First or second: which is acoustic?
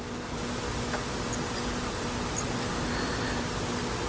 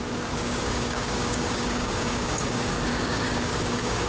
first